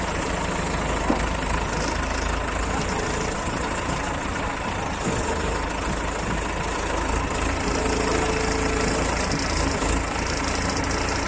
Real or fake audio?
real